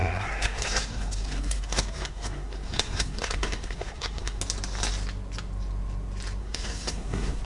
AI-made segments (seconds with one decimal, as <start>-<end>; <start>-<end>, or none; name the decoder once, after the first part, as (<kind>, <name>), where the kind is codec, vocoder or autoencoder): 0.0-4.4 (codec, SNAC); 6.4-7.4